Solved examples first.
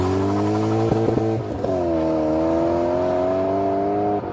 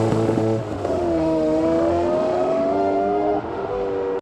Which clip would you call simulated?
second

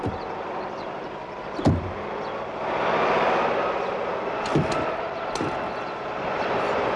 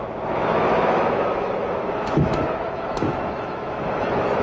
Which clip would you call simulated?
second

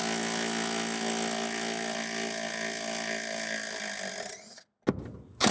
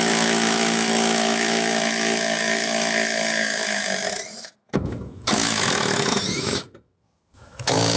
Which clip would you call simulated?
second